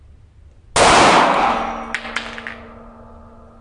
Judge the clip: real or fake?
real